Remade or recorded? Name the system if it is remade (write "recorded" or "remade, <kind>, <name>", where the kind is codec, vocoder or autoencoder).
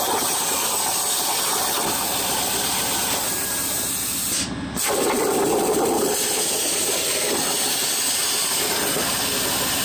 recorded